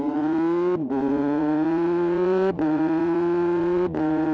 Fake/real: fake